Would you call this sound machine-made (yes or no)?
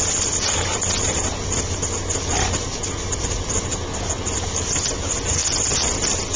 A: no